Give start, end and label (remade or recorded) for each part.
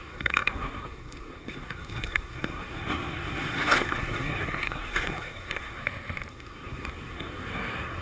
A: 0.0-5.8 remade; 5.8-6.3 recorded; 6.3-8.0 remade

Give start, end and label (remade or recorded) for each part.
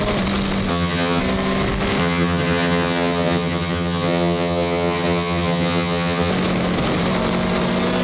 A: 0.0-0.7 recorded; 0.7-1.2 remade; 1.2-2.0 recorded; 2.0-6.3 remade; 6.3-8.0 recorded